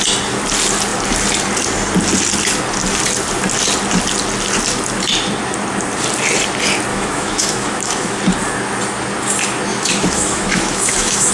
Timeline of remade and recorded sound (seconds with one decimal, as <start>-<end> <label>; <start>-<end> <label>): 0.0-6.9 recorded; 6.9-8.2 remade; 8.2-9.7 recorded; 9.7-11.3 remade